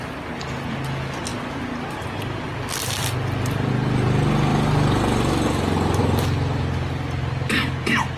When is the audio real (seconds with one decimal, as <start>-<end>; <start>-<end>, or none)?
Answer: 0.0-3.0; 3.7-8.2